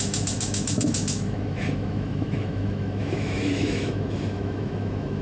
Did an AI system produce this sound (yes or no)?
yes